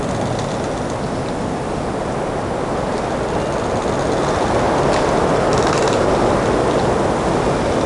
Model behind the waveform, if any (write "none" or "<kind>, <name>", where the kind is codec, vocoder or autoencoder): none